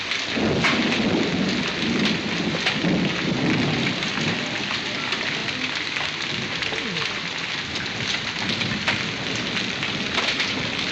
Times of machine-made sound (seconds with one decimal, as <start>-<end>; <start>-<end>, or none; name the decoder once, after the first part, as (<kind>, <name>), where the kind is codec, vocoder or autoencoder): none